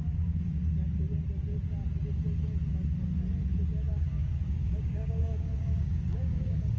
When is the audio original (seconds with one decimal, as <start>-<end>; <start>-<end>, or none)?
0.6-3.9